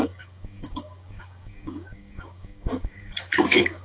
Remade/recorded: remade